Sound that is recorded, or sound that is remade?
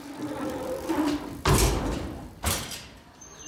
remade